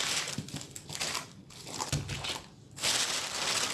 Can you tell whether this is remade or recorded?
recorded